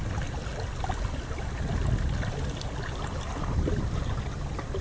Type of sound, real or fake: real